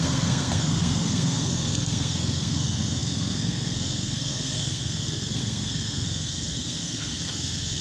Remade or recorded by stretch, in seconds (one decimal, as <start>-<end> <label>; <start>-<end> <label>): 0.0-7.8 remade